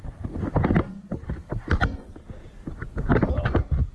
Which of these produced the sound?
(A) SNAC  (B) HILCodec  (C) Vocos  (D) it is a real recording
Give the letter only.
D